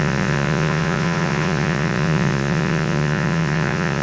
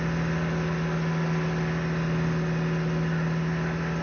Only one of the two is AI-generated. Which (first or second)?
first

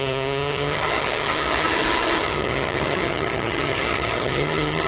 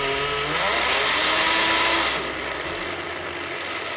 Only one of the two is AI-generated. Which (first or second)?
first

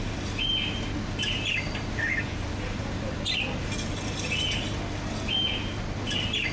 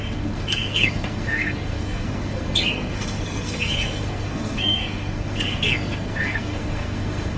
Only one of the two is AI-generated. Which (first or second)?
second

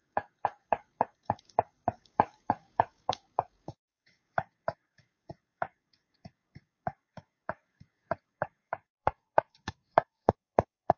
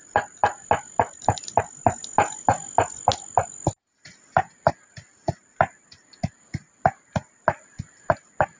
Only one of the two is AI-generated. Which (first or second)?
first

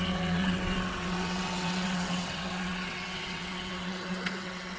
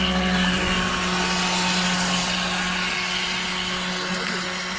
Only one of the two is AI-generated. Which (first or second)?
first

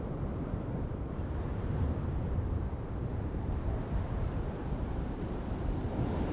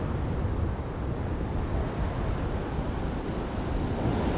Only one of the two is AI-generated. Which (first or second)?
first